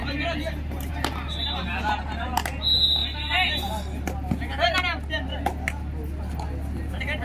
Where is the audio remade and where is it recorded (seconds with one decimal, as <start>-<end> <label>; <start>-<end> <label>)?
0.0-0.9 remade; 0.9-7.2 recorded